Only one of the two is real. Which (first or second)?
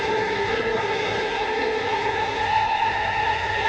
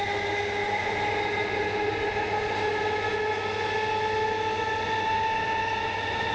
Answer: second